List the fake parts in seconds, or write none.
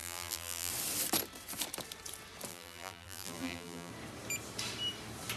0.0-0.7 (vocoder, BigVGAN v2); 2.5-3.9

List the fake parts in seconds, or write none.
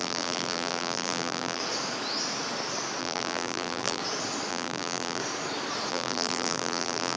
0.0-1.6 (vocoder, BigVGAN v2); 3.0-4.0; 4.5-5.2; 5.9-7.2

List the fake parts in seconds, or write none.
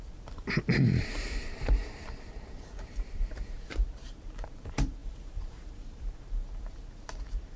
0.0-7.6 (vocoder, BigVGAN v2)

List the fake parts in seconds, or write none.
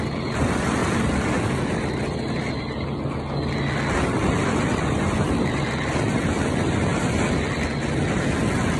none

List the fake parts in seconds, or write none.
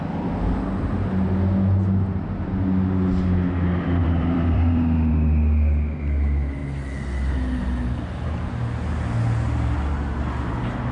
4.0-5.1 (vocoder, BigVGAN v2)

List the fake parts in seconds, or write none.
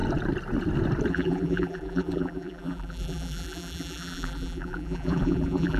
1.1-5.8 (vocoder, BigVGAN v2)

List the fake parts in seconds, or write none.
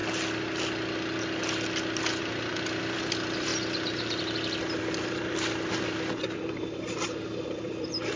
2.2-3.5 (vocoder, BigVGAN v2); 4.8-8.2